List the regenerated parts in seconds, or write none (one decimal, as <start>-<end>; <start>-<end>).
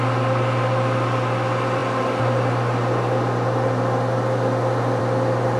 none